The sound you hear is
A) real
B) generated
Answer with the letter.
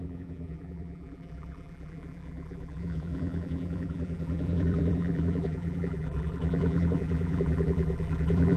B